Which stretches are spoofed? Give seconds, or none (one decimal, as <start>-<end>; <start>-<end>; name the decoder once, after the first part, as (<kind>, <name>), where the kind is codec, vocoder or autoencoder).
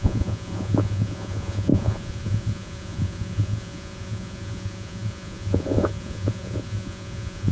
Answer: 0.0-7.5 (vocoder, Vocos)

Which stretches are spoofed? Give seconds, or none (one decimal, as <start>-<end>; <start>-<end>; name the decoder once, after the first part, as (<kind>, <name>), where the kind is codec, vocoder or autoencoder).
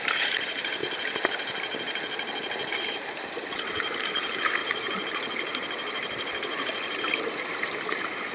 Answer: 0.0-0.8 (vocoder, BigVGAN v2); 2.7-4.6; 7.0-8.3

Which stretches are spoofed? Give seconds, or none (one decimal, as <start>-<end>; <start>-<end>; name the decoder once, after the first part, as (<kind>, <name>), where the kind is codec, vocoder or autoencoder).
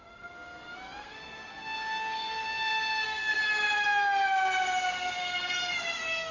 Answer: 0.0-3.4 (codec, SNAC); 4.8-6.3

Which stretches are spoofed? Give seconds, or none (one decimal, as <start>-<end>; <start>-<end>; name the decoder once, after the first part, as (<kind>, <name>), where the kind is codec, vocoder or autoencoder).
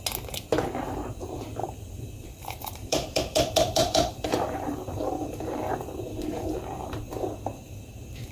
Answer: 1.6-5.4 (vocoder, BigVGAN v2)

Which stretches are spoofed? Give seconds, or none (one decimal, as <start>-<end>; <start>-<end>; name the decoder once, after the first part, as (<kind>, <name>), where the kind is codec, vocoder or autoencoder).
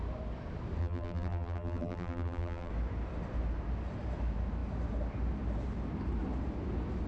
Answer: 0.8-2.7 (vocoder, BigVGAN v2)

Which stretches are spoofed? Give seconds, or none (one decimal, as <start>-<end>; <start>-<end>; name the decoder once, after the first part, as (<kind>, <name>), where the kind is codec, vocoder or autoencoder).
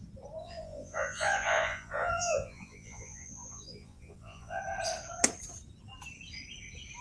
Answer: 0.4-4.6 (vocoder, Vocos)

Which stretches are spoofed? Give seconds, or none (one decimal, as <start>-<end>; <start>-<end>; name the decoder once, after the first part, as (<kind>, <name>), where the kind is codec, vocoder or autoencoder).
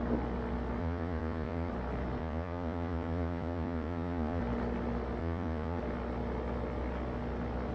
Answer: 0.8-1.7 (vocoder, Vocos); 2.2-4.4; 5.2-5.8